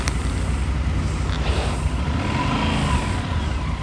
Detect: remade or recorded recorded